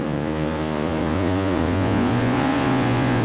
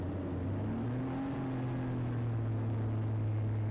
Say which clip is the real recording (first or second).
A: second